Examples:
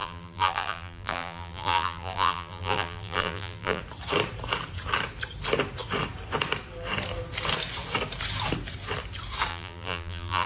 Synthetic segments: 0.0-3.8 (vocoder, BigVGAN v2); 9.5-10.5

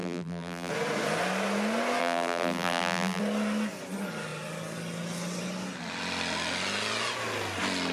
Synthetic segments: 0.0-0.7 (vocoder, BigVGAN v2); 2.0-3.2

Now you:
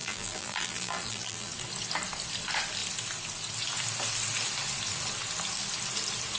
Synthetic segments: 0.0-1.5 (vocoder, BigVGAN v2)